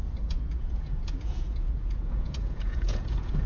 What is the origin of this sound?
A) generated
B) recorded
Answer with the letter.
A